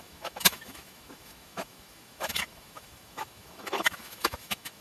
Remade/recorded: remade